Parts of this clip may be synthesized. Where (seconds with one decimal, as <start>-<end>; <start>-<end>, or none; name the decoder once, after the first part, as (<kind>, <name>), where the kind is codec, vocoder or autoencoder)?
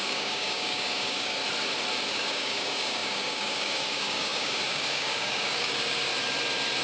0.0-1.4 (codec, DAC); 2.1-6.1